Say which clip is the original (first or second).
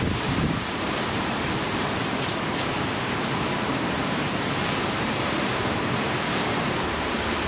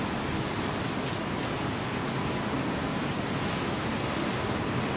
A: second